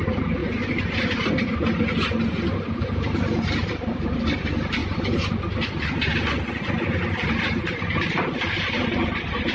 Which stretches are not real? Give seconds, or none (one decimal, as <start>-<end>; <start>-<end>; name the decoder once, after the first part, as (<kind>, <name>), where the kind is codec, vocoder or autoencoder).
0.0-0.4 (vocoder, BigVGAN v2); 2.8-4.8; 7.6-9.5